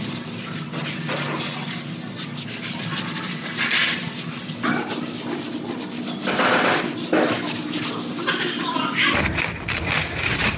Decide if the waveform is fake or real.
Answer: real